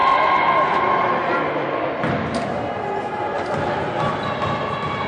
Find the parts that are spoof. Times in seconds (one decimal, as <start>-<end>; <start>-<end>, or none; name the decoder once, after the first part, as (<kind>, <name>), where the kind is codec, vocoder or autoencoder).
none